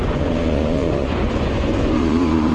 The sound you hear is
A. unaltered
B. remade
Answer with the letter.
B